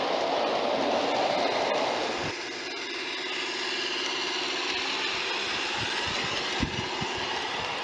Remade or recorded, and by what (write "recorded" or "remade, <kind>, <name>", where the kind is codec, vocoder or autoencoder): recorded